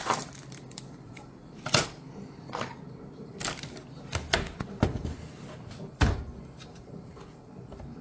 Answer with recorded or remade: remade